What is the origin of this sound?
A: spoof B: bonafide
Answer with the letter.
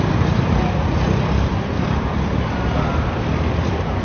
A